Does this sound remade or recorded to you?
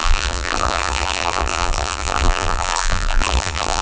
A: remade